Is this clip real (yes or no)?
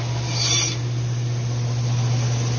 yes